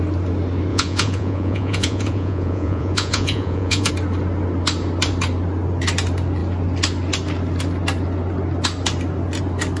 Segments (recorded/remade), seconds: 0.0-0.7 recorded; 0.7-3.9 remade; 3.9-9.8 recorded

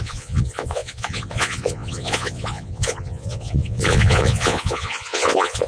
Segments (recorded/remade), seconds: 0.0-5.7 remade

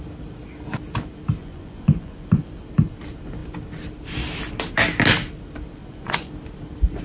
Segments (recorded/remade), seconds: 0.0-1.4 recorded; 1.4-2.5 remade; 2.5-5.8 recorded; 5.8-6.3 remade; 6.3-7.0 recorded

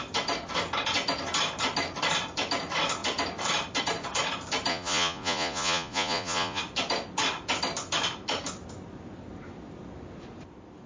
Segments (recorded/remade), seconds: 0.0-4.7 recorded; 4.7-6.6 remade; 6.6-10.9 recorded